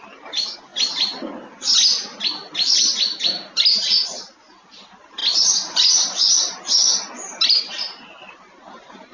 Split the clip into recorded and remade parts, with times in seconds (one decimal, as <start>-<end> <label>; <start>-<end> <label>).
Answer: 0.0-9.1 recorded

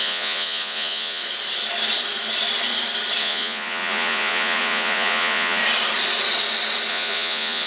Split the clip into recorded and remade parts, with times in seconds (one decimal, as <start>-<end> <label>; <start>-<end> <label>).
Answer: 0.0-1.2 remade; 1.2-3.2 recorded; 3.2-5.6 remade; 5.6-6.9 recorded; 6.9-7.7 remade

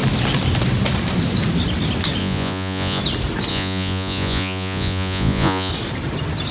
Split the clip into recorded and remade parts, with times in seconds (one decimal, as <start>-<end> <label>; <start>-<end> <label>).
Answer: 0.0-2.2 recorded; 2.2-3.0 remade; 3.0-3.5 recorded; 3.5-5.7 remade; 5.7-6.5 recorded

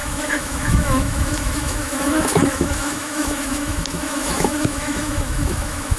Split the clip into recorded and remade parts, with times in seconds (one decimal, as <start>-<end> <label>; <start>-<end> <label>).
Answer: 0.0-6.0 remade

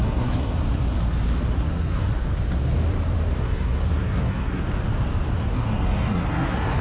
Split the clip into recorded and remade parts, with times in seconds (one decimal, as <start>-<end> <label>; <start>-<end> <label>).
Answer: 0.0-0.5 remade; 0.5-1.5 recorded; 1.5-2.1 remade; 2.1-3.4 recorded; 3.4-4.6 remade; 4.6-5.4 recorded; 5.4-6.8 remade

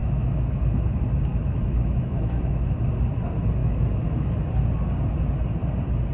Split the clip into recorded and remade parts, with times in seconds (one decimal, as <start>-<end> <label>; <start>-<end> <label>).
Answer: 0.0-0.6 remade; 0.6-1.3 recorded; 1.3-2.9 remade; 2.9-3.6 recorded; 3.6-4.4 remade; 4.4-6.1 recorded

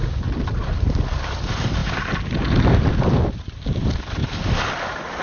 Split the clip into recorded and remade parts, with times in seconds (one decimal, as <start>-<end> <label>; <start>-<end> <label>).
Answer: 0.0-5.2 recorded

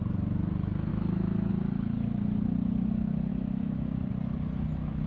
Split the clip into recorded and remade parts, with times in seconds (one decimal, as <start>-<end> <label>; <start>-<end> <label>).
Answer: 0.0-0.9 recorded; 0.9-1.5 remade; 1.5-3.3 recorded; 3.3-4.1 remade; 4.1-5.1 recorded